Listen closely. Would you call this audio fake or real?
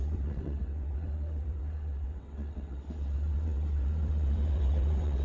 fake